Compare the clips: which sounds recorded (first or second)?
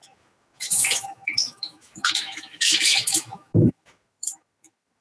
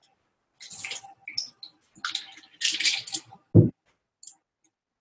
second